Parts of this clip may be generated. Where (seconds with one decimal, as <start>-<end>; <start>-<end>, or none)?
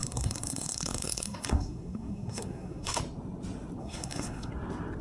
0.0-3.0; 3.8-4.5